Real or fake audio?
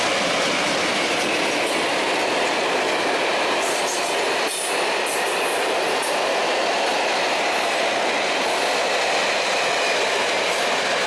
real